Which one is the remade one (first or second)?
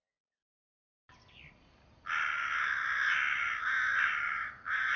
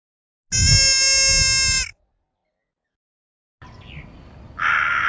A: first